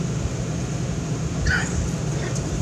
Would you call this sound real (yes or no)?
yes